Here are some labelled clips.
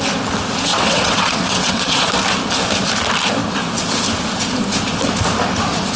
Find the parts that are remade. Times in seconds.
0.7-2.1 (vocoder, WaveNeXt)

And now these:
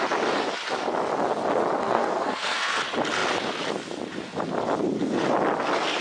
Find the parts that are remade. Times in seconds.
1.8-2.8 (codec, SNAC)

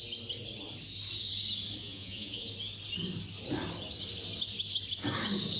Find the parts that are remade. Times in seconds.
1.8-2.5 (vocoder, Vocos)

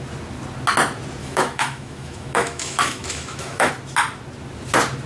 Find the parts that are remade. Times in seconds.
1.2-3.7 (autoencoder, DAC-VAE)